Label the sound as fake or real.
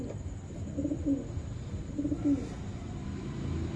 real